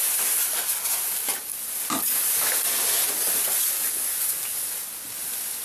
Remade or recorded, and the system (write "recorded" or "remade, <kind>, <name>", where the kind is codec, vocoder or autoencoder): recorded